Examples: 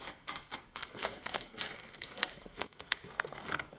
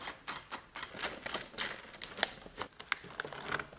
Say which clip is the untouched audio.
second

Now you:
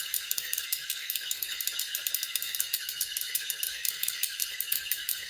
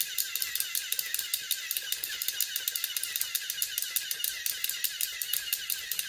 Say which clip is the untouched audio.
second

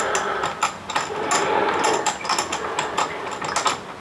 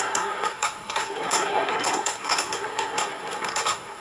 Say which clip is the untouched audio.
first